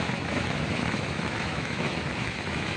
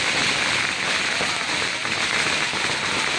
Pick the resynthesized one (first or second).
first